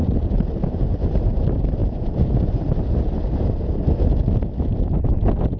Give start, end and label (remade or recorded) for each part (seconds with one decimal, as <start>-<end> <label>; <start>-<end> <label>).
0.0-5.6 recorded